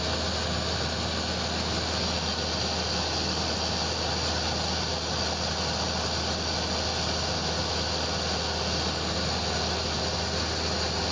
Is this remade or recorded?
recorded